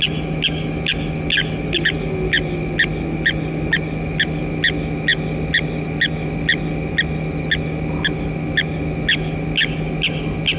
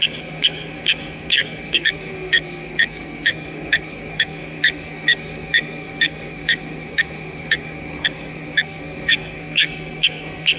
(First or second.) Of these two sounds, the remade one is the second